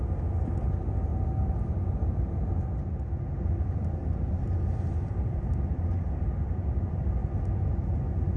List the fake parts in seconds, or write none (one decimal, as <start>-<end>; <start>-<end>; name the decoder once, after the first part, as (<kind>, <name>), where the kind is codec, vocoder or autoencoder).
none